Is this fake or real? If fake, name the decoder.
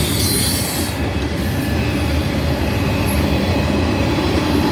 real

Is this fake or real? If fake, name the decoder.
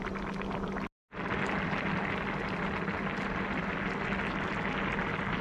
real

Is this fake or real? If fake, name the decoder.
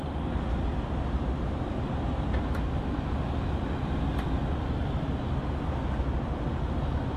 real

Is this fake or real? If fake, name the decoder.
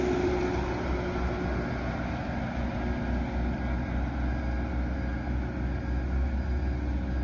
real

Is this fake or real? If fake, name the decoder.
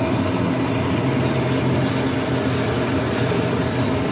real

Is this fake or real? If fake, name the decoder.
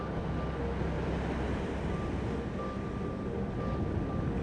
real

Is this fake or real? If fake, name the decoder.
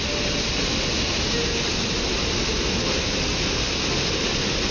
real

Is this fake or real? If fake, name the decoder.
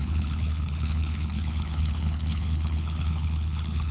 fake, codec, HILCodec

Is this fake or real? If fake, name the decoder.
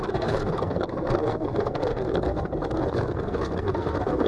fake, codec, SNAC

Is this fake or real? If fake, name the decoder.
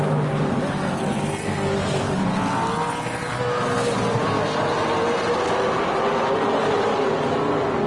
real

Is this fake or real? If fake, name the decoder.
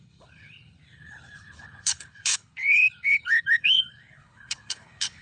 fake, codec, HILCodec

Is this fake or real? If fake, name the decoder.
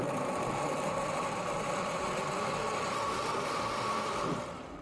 real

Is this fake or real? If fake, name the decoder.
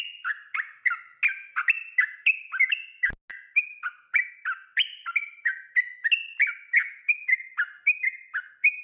real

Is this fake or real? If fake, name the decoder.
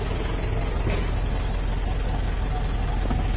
real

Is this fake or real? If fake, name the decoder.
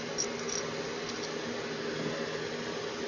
real